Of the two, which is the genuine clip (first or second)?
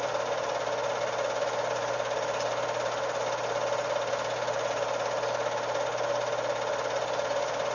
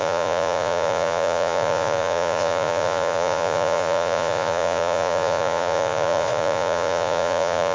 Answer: first